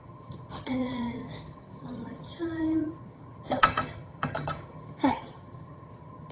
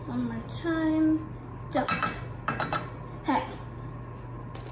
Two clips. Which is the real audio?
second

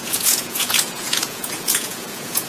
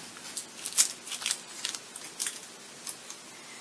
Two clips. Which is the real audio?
second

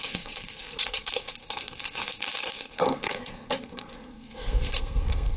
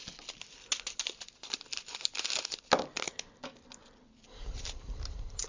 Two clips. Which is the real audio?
second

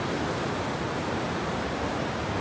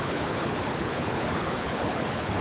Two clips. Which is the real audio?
first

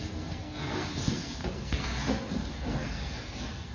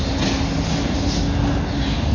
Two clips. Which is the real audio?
second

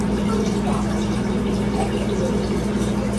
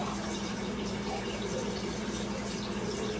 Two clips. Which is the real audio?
first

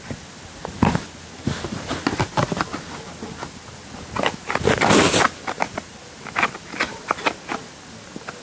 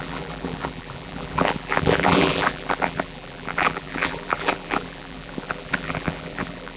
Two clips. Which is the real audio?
first